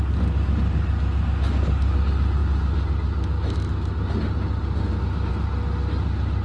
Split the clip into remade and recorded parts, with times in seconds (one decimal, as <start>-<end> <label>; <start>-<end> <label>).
0.0-6.4 recorded